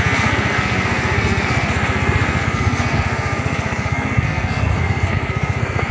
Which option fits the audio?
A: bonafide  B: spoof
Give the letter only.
B